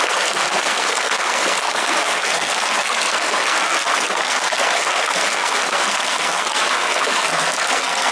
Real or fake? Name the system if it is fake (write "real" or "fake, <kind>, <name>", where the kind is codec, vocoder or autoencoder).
fake, codec, SNAC